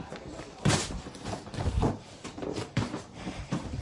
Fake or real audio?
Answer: fake